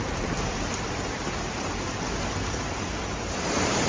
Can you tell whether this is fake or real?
fake